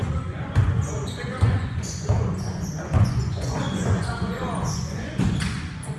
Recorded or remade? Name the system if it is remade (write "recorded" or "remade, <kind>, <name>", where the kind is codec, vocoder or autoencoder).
remade, vocoder, Vocos